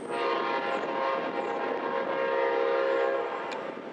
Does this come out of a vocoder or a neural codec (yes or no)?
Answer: no